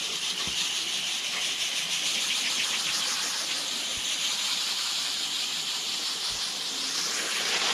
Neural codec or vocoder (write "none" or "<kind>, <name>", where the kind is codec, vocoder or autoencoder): none